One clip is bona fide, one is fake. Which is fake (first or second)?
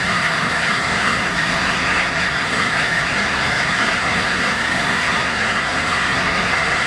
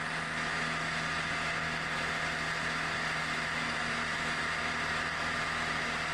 first